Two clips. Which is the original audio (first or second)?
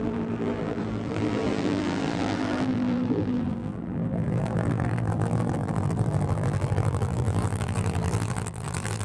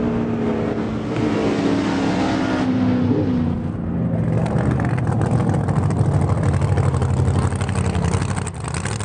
second